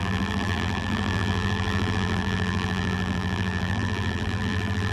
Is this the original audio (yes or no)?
no